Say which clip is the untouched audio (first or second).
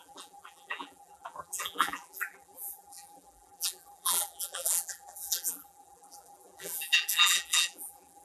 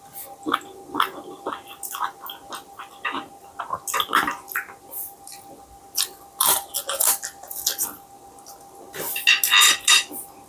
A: second